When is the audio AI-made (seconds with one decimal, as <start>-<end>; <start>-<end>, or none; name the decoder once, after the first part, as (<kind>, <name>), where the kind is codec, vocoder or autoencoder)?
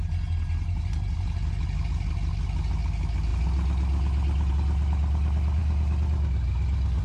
none